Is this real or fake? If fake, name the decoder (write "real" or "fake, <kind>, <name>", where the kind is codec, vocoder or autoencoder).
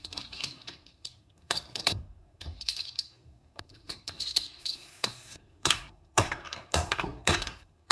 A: fake, codec, SNAC